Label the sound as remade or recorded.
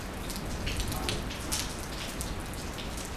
recorded